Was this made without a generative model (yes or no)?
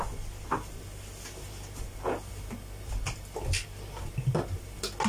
yes